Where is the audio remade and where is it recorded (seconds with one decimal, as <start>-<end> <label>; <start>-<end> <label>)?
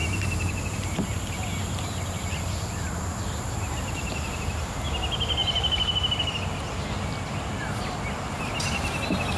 0.0-4.6 remade; 4.6-9.4 recorded